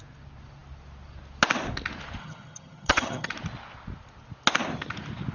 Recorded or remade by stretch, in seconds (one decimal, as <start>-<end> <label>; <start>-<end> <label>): 0.0-2.2 recorded; 2.2-3.3 remade; 3.3-5.3 recorded